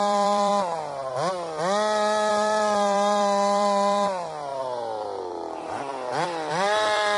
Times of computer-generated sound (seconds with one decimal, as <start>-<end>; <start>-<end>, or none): 0.0-0.5; 2.3-4.5; 5.2-7.2